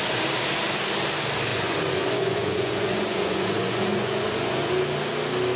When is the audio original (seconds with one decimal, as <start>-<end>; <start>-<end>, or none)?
0.0-1.5; 4.7-5.6